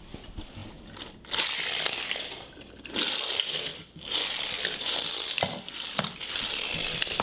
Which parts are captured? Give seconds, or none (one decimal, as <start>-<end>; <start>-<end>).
0.0-0.6; 2.6-3.7; 6.2-7.2